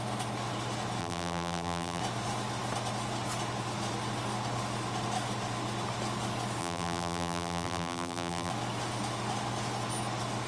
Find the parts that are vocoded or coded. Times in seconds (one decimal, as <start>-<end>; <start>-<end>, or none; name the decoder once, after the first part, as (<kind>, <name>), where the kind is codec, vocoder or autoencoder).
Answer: 1.0-2.0 (vocoder, BigVGAN v2); 6.6-8.5